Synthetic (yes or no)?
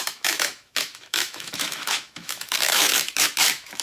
yes